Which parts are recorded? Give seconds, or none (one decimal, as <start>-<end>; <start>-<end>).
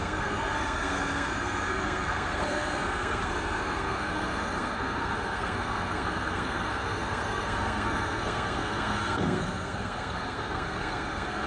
none